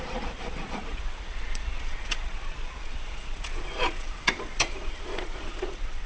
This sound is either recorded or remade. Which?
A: remade